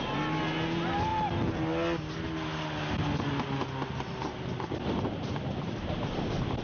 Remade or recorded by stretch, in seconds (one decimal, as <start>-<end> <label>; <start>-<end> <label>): 0.0-6.6 recorded